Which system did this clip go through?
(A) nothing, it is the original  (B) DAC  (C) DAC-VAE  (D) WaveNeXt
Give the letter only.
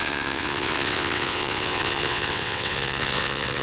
D